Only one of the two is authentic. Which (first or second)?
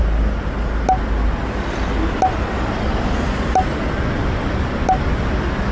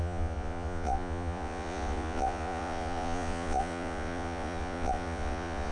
first